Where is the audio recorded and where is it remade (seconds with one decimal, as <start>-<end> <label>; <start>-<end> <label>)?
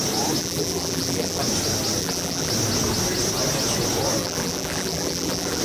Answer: 0.0-0.4 recorded; 0.4-1.4 remade; 1.4-2.0 recorded; 2.0-2.5 remade; 2.5-4.2 recorded; 4.2-5.6 remade